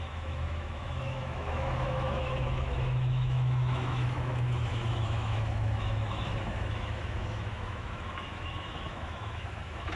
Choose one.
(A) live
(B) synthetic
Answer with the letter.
B